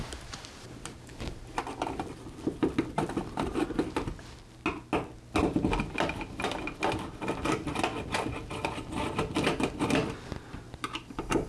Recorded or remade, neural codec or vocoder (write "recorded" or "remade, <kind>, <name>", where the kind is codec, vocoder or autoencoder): recorded